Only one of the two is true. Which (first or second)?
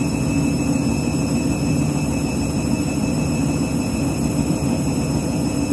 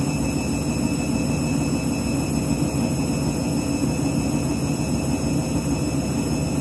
second